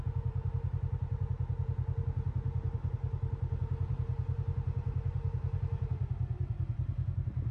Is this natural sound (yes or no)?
yes